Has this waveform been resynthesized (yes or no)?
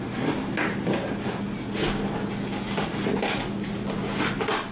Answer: no